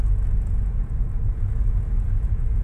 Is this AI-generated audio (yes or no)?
yes